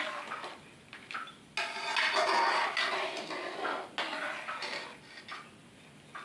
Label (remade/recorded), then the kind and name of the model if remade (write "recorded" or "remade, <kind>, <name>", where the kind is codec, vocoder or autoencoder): recorded